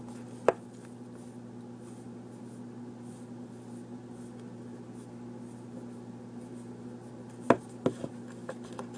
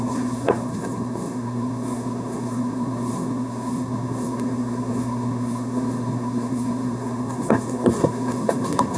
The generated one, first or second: second